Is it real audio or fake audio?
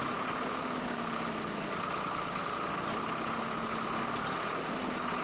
real